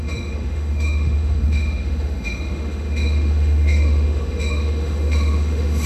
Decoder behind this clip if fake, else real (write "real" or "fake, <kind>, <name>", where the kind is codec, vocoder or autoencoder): fake, autoencoder, DAC-VAE